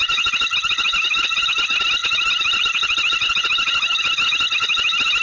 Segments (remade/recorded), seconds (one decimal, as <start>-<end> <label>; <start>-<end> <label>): 0.0-5.2 recorded